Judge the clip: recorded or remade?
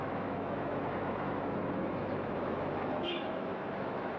remade